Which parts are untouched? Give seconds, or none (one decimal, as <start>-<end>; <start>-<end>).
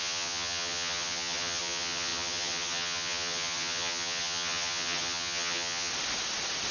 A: 5.9-6.7